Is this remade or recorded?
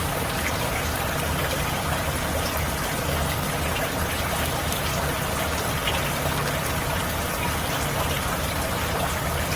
recorded